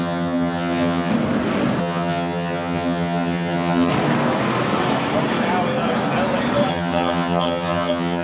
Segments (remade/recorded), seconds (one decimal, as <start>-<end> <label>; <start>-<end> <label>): 0.0-1.1 remade; 1.1-1.8 recorded; 1.8-3.9 remade; 3.9-6.7 recorded; 6.7-8.2 remade